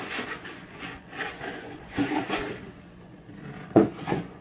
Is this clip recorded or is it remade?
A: remade